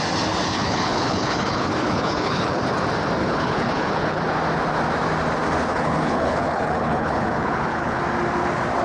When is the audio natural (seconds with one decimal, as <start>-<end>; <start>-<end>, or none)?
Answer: 0.0-0.5; 2.6-3.2; 4.2-5.7; 8.0-8.8